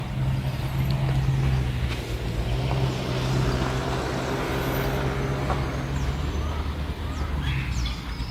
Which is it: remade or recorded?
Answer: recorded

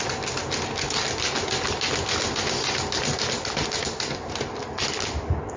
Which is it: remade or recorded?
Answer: recorded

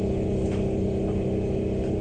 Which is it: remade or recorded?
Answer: recorded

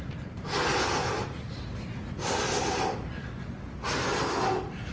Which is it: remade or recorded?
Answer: recorded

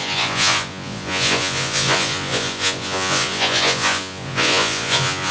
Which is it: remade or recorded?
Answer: remade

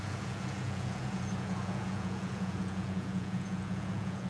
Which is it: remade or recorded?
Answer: remade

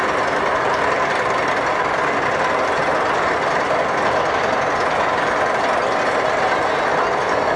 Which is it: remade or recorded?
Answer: recorded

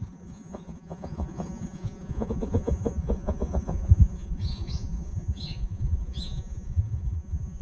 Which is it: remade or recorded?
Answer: remade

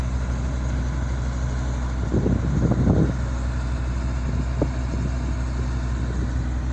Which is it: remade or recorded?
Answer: recorded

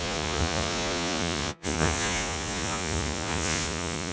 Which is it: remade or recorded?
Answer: remade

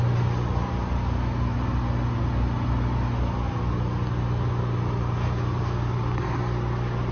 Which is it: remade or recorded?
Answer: recorded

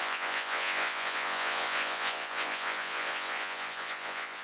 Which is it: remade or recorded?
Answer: remade